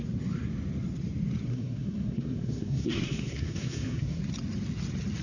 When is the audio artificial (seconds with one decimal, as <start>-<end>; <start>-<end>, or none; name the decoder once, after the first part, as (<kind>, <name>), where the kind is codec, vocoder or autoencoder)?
1.5-4.2 (codec, SNAC)

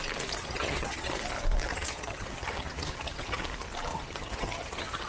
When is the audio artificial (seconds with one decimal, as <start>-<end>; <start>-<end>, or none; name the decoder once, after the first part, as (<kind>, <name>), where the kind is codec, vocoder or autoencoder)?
0.4-1.1 (vocoder, HiFi-GAN); 1.7-3.4; 3.9-5.1

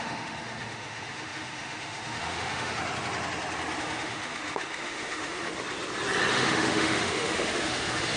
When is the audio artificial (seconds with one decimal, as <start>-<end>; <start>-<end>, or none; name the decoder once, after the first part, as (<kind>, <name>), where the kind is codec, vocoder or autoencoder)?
0.0-2.8 (autoencoder, DAC-VAE); 3.8-5.5; 6.3-8.2